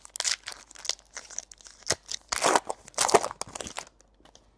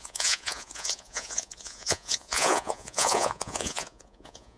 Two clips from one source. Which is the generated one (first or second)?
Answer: second